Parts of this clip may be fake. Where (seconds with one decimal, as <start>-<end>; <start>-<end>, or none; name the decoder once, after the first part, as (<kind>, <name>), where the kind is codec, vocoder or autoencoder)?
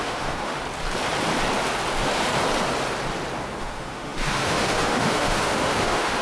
0.0-0.6 (autoencoder, DAC-VAE); 3.6-6.2